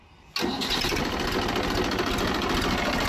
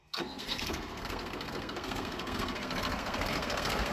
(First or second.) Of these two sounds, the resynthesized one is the second